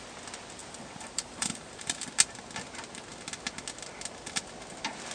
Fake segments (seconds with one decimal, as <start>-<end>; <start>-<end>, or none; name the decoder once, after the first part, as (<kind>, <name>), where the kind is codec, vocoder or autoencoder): 0.6-2.1 (vocoder, BigVGAN v2)